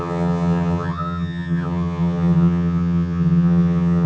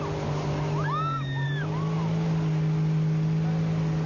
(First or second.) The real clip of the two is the second